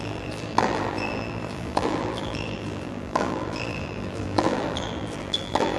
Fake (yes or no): yes